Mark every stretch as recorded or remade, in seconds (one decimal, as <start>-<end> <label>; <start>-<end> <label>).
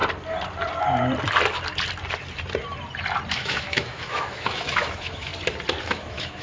0.0-3.3 recorded; 3.3-5.3 remade; 5.3-5.8 recorded; 5.8-6.4 remade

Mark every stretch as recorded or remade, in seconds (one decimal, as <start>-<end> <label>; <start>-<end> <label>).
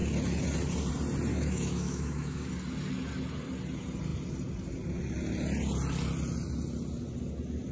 0.0-1.3 recorded; 1.3-2.5 remade; 2.5-7.7 recorded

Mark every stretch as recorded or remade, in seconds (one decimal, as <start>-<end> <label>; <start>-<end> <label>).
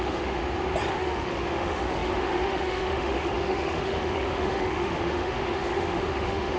0.0-0.4 remade; 0.4-0.9 recorded; 0.9-6.6 remade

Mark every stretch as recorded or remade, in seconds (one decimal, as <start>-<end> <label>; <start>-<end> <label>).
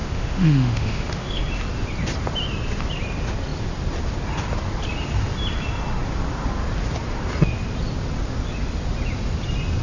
0.0-1.4 remade; 1.4-9.8 recorded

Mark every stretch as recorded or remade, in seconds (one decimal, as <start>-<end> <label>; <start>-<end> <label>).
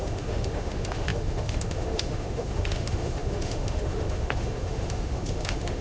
0.0-5.8 remade